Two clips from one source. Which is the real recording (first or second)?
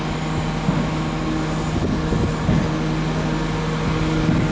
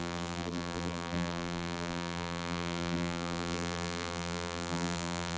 first